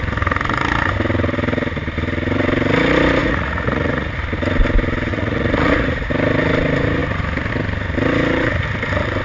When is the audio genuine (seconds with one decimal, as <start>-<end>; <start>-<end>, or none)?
0.0-3.2; 4.1-5.1; 6.1-9.2